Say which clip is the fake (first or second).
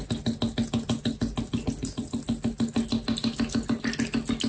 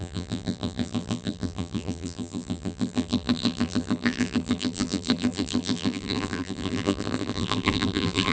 second